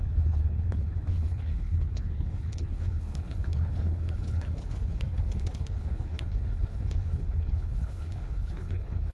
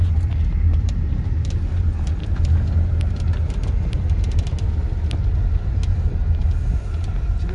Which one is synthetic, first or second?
first